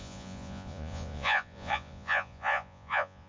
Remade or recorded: remade